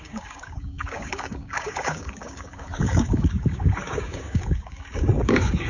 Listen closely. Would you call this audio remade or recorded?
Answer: remade